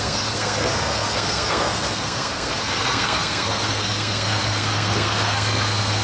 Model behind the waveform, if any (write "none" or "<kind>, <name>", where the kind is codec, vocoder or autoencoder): codec, SNAC